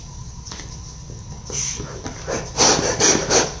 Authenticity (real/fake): real